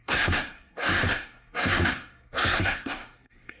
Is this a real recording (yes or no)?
no